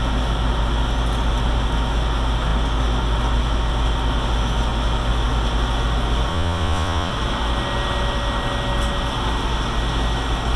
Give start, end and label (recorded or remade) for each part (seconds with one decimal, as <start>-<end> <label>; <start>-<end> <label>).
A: 0.0-6.3 recorded; 6.3-7.1 remade; 7.1-10.6 recorded

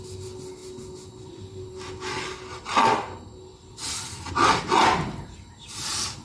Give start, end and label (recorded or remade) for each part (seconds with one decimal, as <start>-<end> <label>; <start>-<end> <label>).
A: 0.0-6.2 recorded

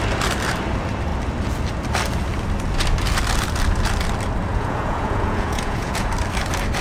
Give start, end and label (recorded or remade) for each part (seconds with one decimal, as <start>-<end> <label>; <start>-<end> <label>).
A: 0.0-4.5 recorded; 4.5-6.1 remade; 6.1-6.8 recorded

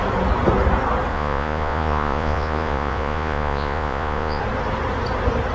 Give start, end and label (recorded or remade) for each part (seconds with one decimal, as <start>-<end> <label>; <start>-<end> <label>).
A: 0.0-1.1 recorded; 1.1-4.4 remade; 4.4-5.5 recorded